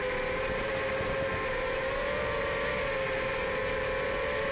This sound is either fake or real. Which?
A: fake